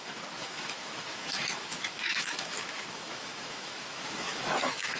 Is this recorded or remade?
remade